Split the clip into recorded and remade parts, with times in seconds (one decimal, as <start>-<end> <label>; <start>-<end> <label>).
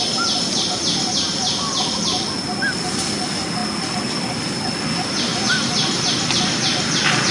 0.0-5.3 recorded; 5.3-6.1 remade; 6.1-7.3 recorded